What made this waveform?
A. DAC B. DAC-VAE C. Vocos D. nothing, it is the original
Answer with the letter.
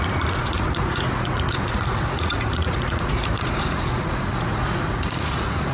C